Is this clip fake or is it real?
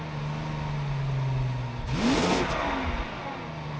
real